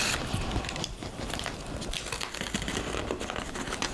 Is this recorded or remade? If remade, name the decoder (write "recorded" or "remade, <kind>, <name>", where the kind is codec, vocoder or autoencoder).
recorded